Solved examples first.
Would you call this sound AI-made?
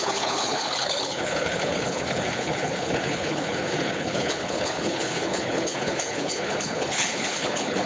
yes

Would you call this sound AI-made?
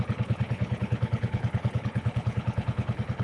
yes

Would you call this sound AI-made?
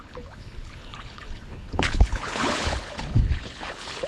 yes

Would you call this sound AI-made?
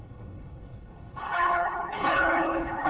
yes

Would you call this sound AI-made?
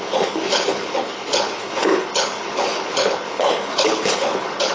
yes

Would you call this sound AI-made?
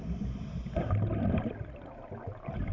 no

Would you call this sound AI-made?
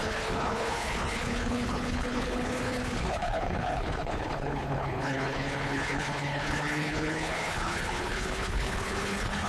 yes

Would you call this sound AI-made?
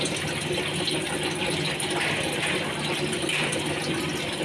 no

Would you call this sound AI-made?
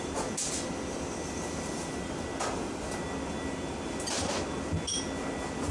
no